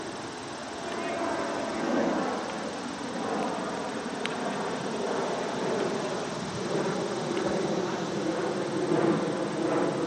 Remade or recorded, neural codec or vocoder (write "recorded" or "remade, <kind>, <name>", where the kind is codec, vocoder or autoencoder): recorded